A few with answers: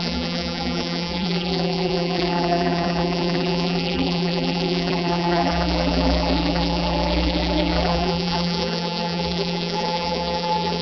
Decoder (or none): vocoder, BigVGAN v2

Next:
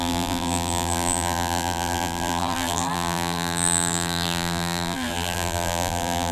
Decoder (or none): vocoder, BigVGAN v2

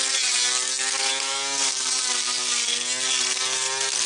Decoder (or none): none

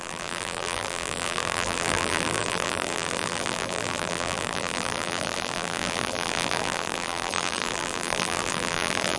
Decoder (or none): vocoder, BigVGAN v2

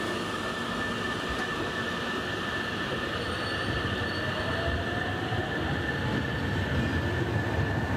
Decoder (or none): none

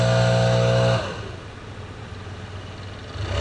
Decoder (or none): none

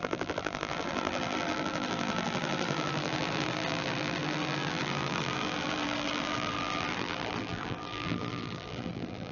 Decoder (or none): vocoder, BigVGAN v2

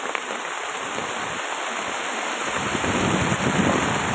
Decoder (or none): none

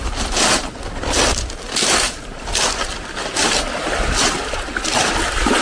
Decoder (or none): none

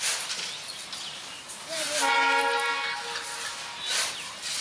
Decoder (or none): none